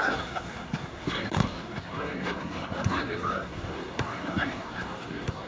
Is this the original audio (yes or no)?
no